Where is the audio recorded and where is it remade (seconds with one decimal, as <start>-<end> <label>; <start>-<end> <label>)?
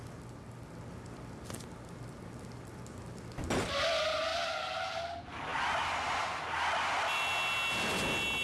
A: 0.0-8.4 recorded